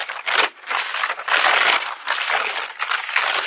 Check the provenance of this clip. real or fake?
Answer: real